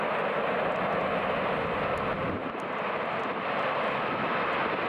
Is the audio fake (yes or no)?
no